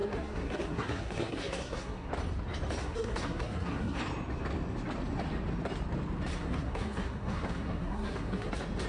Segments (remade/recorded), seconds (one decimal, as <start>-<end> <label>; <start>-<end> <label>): 0.0-2.1 remade; 2.1-2.8 recorded; 2.8-4.0 remade; 4.0-6.3 recorded; 6.3-8.5 remade; 8.5-8.9 recorded